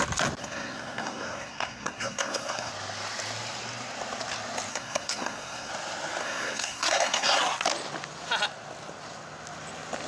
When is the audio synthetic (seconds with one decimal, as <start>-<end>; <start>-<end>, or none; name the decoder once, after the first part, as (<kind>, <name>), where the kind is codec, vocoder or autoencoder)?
0.4-2.7 (codec, SNAC); 4.7-5.7; 6.2-7.4